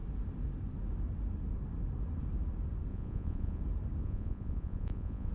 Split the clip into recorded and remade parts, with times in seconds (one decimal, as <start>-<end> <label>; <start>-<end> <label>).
0.0-2.9 recorded; 2.9-3.6 remade; 3.6-4.0 recorded; 4.0-5.3 remade